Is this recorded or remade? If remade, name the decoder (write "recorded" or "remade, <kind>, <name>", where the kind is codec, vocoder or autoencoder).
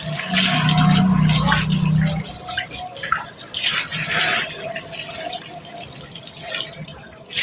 recorded